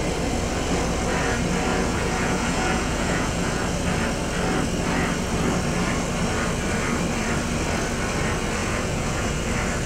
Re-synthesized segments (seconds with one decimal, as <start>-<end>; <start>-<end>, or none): 1.7-3.6; 8.6-9.4